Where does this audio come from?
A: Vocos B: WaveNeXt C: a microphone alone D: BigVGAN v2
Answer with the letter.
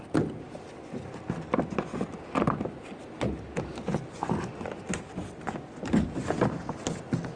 C